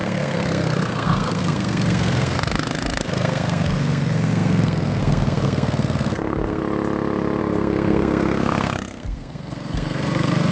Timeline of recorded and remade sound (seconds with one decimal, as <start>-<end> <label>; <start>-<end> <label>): 0.0-6.6 remade; 6.6-7.4 recorded; 7.4-10.5 remade